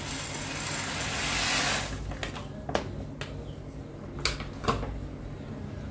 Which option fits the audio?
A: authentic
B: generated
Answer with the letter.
A